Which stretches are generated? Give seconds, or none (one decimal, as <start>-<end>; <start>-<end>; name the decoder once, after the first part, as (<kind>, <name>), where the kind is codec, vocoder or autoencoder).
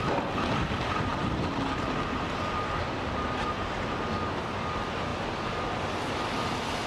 none